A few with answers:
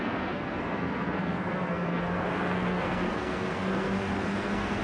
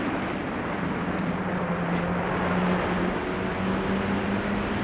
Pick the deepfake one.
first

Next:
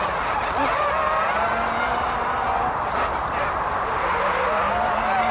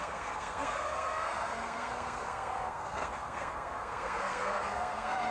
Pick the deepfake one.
second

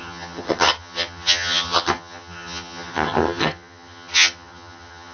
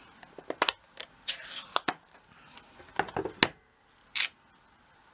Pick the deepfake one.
first